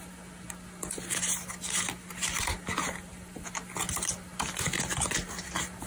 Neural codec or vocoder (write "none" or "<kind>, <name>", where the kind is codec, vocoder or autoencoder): none